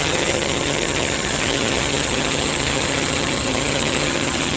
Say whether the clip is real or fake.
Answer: fake